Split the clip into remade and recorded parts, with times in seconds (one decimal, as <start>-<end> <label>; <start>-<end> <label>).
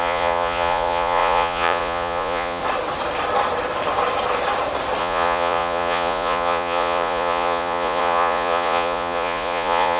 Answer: 0.0-2.6 remade; 2.6-5.0 recorded; 5.0-10.0 remade